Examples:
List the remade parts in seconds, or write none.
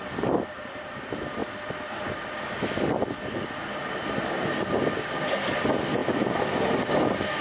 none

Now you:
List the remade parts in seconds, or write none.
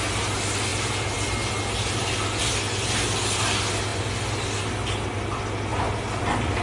none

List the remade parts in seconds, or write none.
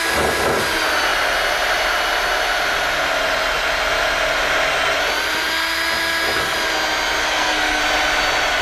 7.2-7.8 (codec, SNAC)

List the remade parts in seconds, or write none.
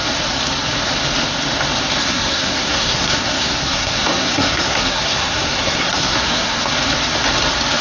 2.0-6.7 (codec, SNAC)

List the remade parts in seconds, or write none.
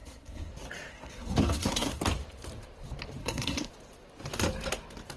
0.0-0.5 (codec, SNAC); 0.9-2.0; 3.2-3.7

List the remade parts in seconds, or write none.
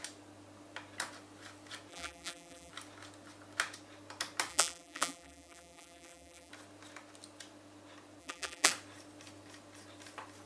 1.9-2.7 (vocoder, BigVGAN v2); 4.5-6.5; 8.2-8.7